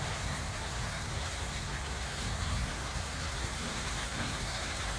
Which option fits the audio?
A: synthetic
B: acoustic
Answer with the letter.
A